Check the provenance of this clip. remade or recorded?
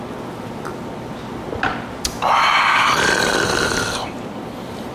recorded